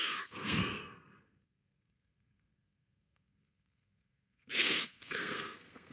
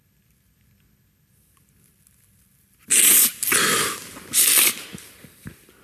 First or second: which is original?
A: second